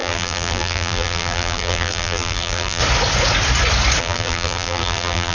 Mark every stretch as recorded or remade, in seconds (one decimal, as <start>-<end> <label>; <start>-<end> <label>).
0.0-2.8 remade; 2.8-4.0 recorded; 4.0-5.3 remade